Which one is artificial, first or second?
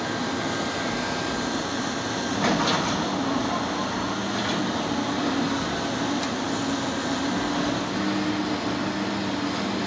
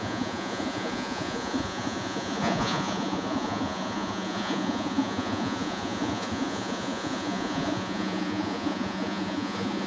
second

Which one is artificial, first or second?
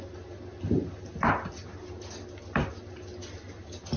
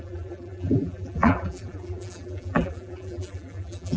second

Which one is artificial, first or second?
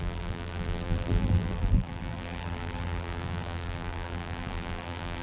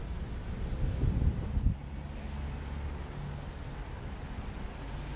first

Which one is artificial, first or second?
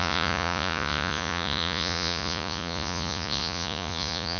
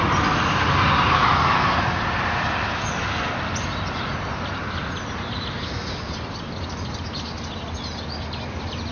first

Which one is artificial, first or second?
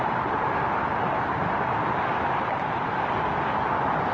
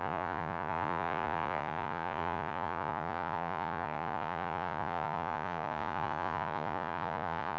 second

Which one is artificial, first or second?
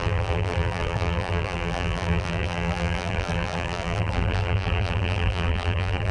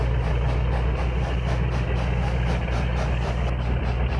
first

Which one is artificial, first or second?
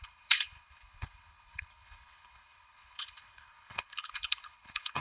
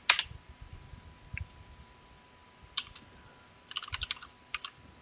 first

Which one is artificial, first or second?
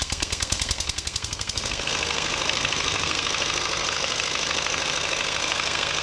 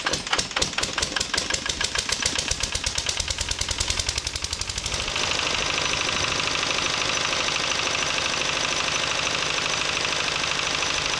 first